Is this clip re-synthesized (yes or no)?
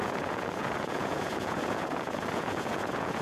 yes